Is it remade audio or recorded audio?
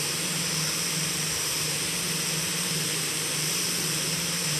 remade